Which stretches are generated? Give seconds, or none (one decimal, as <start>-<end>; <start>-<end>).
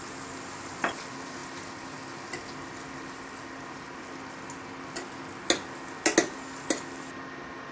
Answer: none